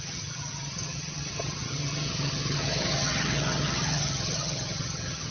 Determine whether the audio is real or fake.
fake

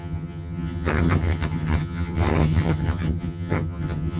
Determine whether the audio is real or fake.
fake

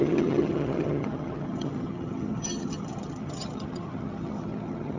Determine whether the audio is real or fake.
fake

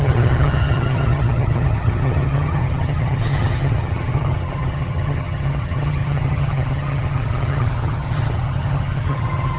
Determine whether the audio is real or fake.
fake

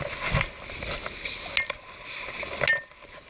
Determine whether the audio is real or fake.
real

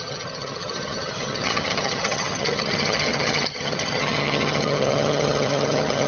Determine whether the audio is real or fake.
fake